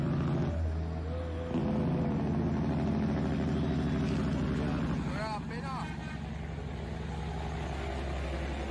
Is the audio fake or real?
real